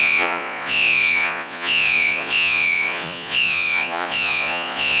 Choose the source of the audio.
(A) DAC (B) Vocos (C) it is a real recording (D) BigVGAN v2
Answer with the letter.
B